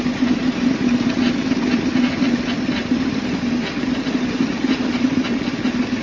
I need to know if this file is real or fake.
real